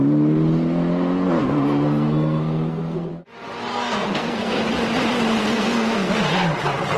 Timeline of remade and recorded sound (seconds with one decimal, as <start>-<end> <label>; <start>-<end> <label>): 0.0-1.4 recorded; 1.4-3.1 remade; 3.1-3.7 recorded; 3.7-4.6 remade; 4.6-5.4 recorded; 5.4-6.1 remade; 6.1-7.0 recorded